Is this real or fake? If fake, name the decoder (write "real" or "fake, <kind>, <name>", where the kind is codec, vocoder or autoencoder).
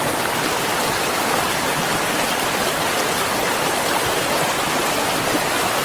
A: real